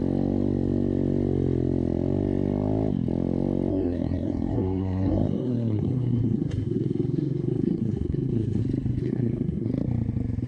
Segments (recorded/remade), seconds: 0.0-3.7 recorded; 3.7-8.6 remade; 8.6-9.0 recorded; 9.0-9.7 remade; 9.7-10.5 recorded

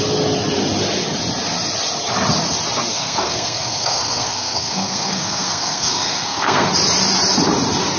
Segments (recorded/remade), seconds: 0.0-2.9 recorded; 2.9-6.7 remade; 6.7-8.0 recorded

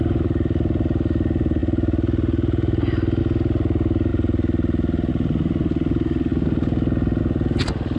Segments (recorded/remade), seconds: 0.0-8.0 recorded

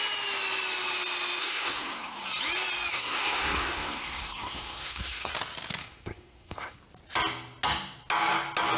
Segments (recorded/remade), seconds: 0.0-1.4 recorded; 1.4-2.2 remade; 2.2-2.9 recorded; 2.9-5.3 remade; 5.3-5.8 recorded; 5.8-6.8 remade; 6.8-8.8 recorded

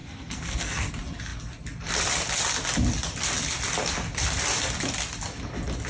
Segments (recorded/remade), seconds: 0.0-0.9 remade; 0.9-5.9 recorded

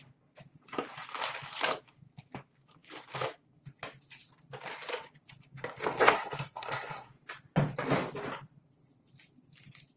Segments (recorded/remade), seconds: 0.0-6.0 recorded; 6.0-7.1 remade; 7.1-10.0 recorded

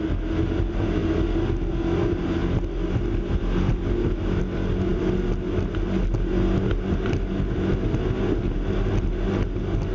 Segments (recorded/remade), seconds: 0.0-9.9 recorded